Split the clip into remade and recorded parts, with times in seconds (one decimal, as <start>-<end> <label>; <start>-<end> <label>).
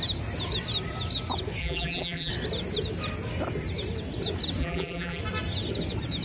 0.0-1.6 recorded; 1.6-2.3 remade; 2.3-4.6 recorded; 4.6-5.2 remade; 5.2-6.2 recorded